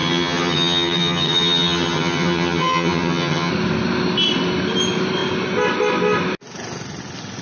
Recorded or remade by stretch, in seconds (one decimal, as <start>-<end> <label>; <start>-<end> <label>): 0.0-3.5 remade; 3.5-7.4 recorded